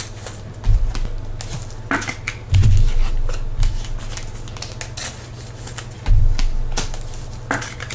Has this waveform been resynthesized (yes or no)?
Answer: no